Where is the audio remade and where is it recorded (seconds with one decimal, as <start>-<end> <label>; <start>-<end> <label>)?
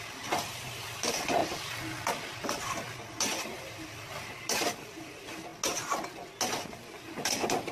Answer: 0.0-7.7 recorded